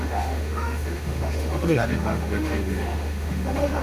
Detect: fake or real fake